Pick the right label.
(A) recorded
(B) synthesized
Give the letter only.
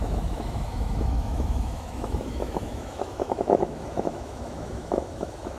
B